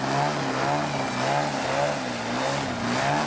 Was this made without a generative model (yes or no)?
yes